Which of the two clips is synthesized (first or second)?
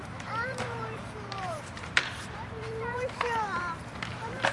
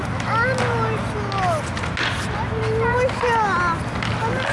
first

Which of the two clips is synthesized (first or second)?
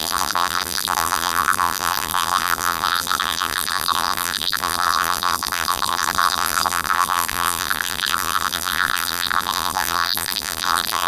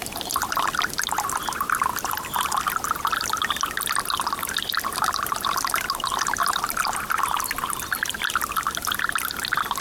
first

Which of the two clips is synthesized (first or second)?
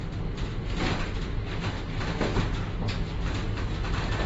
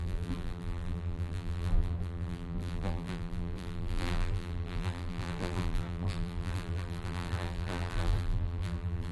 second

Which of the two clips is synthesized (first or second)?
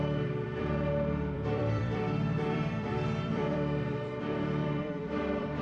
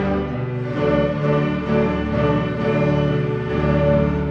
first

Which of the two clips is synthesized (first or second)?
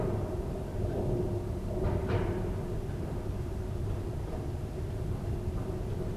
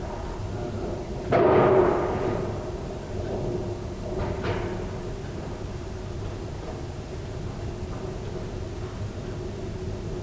first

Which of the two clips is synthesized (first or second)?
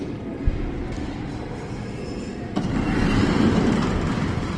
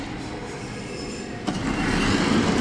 first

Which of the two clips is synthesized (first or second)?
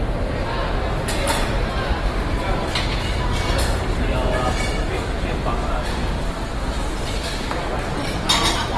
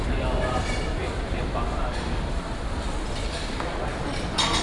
second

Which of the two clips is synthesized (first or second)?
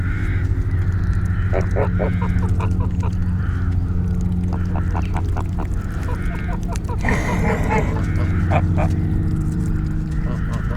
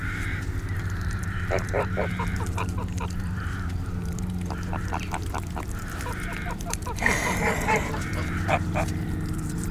second